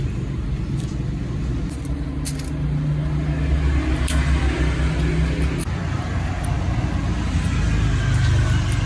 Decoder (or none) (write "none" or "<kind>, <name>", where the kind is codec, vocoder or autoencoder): none